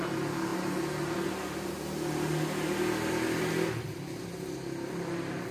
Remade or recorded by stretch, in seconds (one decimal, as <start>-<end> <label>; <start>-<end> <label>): 0.0-5.5 recorded